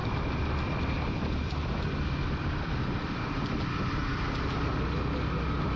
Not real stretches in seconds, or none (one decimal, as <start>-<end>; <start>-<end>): 0.0-3.5